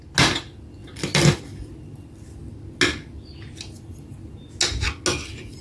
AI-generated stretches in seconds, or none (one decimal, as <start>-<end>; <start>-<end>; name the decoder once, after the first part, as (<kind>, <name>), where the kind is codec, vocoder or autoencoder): none